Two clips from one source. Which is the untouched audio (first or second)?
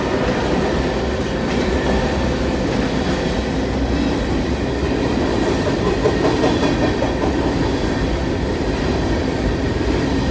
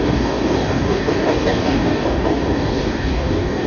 first